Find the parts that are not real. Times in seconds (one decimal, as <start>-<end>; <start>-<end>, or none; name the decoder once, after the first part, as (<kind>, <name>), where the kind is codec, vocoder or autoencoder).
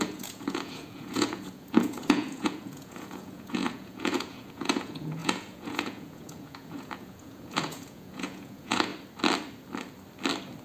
0.0-8.9 (vocoder, Vocos)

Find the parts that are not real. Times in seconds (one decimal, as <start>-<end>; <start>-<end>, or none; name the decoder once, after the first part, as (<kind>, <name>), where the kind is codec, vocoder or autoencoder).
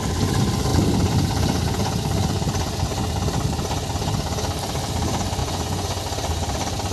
5.4-6.0 (vocoder, Vocos)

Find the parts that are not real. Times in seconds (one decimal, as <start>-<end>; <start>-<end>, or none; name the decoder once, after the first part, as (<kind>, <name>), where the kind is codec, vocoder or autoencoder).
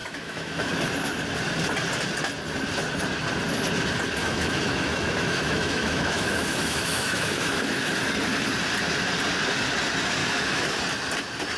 0.0-0.7 (autoencoder, DAC-VAE); 4.2-8.0; 10.2-10.8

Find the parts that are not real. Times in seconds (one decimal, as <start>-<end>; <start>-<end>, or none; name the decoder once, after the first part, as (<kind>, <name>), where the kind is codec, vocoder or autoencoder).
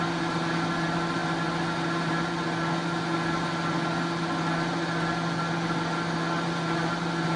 none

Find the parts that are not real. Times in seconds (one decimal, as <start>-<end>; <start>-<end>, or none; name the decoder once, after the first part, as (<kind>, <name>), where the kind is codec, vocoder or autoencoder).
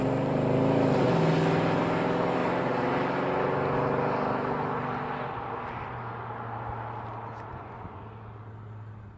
7.5-8.0 (vocoder, Vocos)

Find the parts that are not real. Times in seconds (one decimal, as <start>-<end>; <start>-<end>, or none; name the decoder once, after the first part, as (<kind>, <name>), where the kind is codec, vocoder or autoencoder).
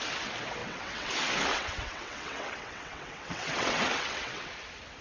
0.6-1.1 (vocoder, WaveNeXt); 1.5-4.5